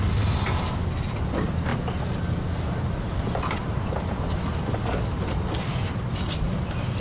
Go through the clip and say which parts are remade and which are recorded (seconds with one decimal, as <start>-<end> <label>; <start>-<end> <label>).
0.0-7.0 recorded